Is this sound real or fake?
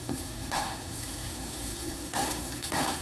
fake